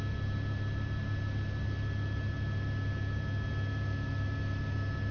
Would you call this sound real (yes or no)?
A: yes